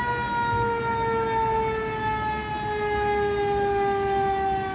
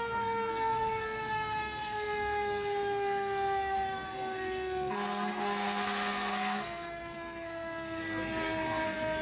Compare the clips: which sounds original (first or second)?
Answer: first